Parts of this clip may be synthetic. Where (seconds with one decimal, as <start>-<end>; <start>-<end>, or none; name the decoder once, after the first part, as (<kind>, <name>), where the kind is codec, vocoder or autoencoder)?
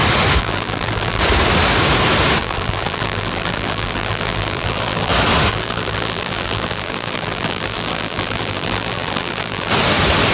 0.4-1.2 (vocoder, BigVGAN v2); 2.4-5.1; 5.5-9.7